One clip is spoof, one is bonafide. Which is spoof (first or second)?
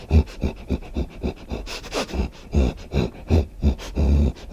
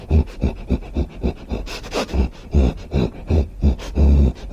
first